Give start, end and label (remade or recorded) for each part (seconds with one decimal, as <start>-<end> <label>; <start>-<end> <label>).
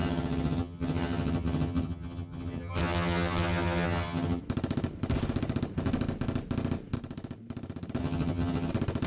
0.0-4.4 remade; 4.4-8.0 recorded; 8.0-8.7 remade; 8.7-9.1 recorded